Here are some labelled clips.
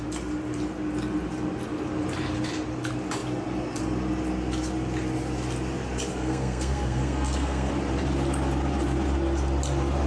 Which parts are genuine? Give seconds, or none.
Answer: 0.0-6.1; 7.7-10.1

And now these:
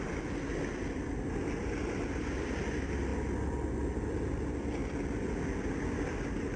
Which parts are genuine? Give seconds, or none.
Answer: 0.0-6.6

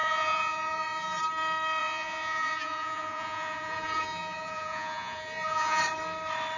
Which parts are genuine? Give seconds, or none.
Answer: 1.2-1.8; 5.8-6.6